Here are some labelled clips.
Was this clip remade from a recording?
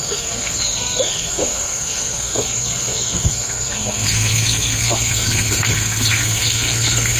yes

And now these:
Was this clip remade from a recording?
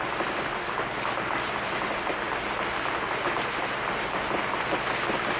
no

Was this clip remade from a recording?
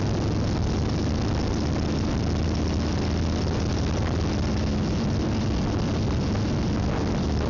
no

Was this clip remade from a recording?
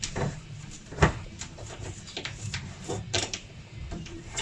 yes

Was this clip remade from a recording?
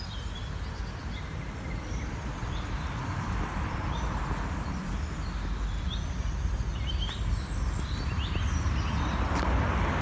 no